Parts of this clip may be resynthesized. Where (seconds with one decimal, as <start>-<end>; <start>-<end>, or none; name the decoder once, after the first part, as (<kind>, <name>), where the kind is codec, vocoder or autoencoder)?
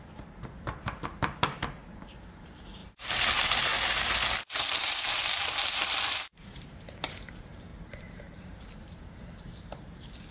0.0-3.7 (vocoder, BigVGAN v2); 4.5-10.3